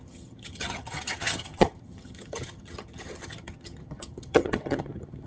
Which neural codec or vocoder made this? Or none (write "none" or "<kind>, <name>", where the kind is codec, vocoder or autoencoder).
vocoder, HiFi-GAN